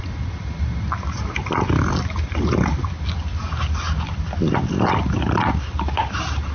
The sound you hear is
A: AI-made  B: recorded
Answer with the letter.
B